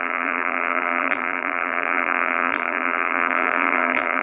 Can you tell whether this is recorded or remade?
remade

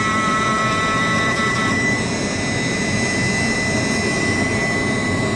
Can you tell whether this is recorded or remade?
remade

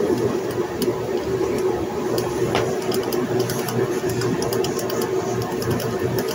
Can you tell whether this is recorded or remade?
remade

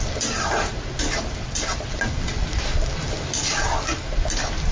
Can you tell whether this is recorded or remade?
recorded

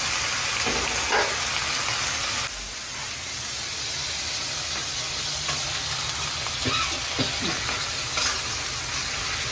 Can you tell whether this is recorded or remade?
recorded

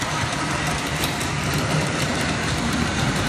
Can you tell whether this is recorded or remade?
remade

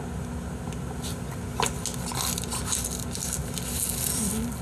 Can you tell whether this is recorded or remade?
recorded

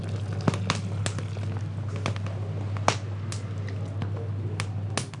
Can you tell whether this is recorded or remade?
recorded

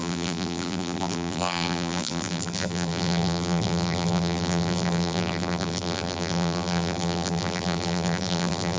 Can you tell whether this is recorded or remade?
remade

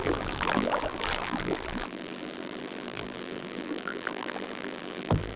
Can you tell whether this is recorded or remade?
remade